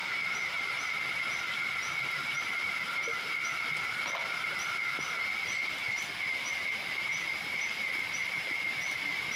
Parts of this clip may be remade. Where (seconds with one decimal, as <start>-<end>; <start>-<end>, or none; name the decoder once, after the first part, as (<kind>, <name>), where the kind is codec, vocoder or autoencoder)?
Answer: none